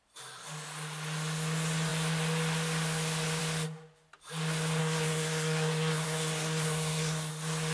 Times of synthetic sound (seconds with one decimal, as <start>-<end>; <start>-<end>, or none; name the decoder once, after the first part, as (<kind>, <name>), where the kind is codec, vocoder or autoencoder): 4.8-7.3 (codec, SNAC)